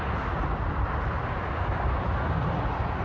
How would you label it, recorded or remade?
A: recorded